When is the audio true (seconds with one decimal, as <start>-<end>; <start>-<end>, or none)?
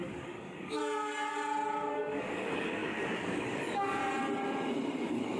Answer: 0.8-1.9; 4.0-5.0